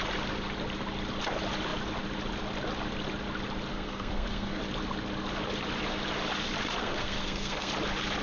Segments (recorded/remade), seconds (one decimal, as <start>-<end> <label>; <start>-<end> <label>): 0.0-3.7 recorded; 3.7-4.6 remade; 4.6-6.8 recorded; 6.8-7.7 remade; 7.7-8.2 recorded